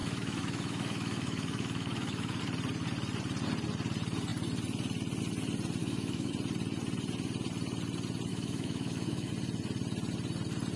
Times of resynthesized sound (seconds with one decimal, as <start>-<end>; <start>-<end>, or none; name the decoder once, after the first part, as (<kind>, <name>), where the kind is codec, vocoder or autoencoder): 0.0-2.4 (autoencoder, DAC-VAE); 5.8-6.3; 8.3-9.3